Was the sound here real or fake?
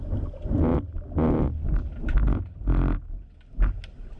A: real